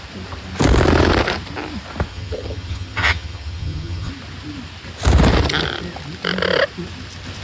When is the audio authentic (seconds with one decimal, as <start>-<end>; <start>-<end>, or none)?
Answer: 0.0-2.1; 4.1-7.4